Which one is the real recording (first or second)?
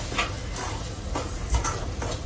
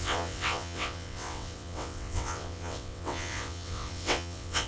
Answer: first